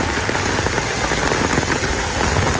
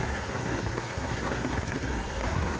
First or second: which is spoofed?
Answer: second